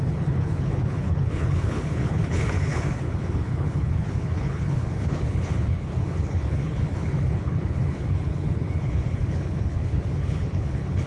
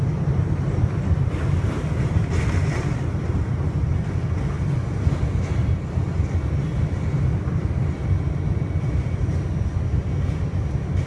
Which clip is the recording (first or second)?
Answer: second